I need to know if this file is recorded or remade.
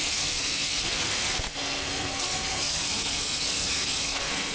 remade